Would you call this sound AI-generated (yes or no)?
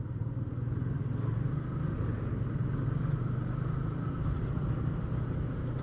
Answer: no